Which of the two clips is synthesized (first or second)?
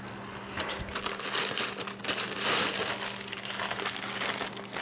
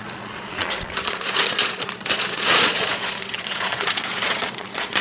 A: second